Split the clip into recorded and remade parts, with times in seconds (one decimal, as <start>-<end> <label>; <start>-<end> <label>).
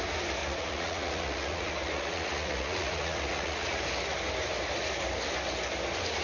0.0-0.4 recorded; 0.4-3.8 remade; 3.8-6.2 recorded